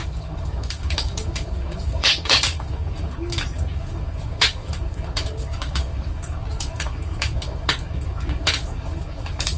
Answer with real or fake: fake